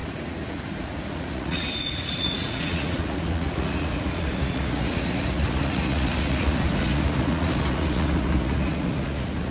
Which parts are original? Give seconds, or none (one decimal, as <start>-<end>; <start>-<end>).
none